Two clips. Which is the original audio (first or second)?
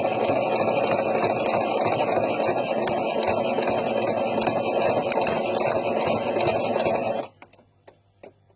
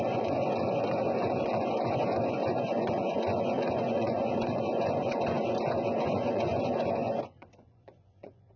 first